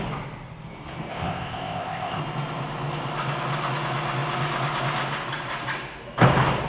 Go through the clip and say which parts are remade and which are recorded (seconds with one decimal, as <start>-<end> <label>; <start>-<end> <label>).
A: 0.0-1.1 recorded; 1.1-2.2 remade; 2.2-6.7 recorded